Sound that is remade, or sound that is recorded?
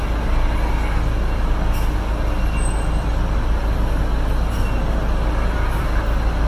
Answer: recorded